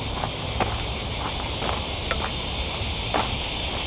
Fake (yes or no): no